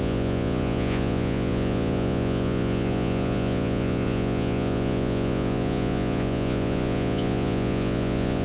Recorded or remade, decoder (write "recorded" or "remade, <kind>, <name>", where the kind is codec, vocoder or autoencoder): remade, vocoder, Vocos